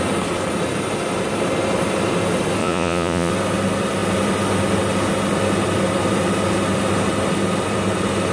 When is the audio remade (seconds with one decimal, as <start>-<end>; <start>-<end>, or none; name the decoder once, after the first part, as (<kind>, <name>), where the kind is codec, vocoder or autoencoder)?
2.6-3.3 (vocoder, Vocos)